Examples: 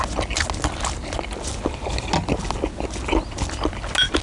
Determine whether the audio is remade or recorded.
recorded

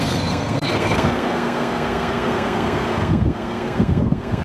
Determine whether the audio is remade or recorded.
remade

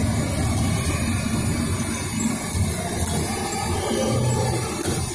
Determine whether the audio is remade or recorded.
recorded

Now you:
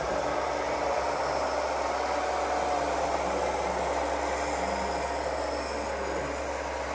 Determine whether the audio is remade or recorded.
recorded